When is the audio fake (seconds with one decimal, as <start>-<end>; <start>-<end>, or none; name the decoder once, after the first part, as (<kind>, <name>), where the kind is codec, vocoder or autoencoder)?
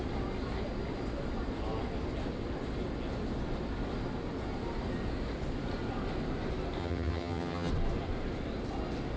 6.8-7.7 (vocoder, HiFi-GAN)